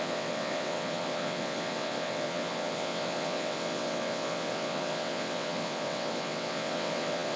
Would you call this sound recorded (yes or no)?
no